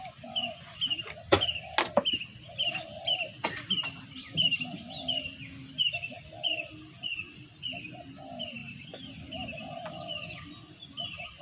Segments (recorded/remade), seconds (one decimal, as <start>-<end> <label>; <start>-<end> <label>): 0.0-11.4 recorded